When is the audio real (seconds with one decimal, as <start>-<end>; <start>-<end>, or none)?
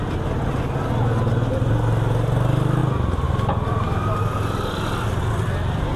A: 0.0-6.0